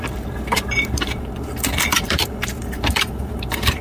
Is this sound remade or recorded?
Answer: remade